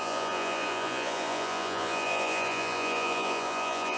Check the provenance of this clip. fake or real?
fake